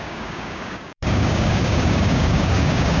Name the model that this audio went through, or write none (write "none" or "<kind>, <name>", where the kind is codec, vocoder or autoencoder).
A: codec, DAC